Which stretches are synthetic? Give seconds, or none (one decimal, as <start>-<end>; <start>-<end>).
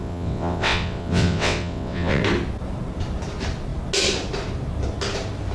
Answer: 0.0-2.2